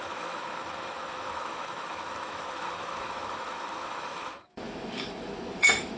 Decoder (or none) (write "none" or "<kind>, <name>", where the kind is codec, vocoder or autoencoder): autoencoder, DAC-VAE